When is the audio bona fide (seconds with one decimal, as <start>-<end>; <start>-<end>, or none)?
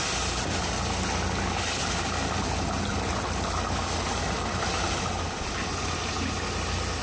0.0-7.0